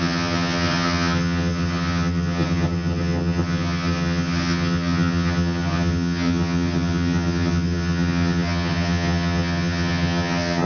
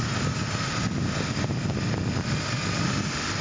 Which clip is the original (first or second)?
second